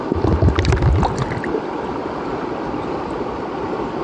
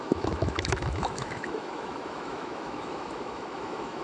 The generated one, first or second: second